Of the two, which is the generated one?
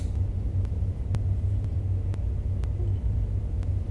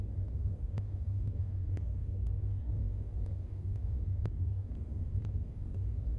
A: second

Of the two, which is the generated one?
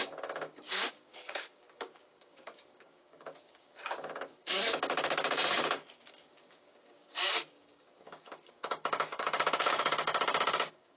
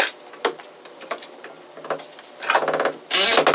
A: first